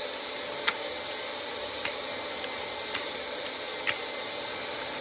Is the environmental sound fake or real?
real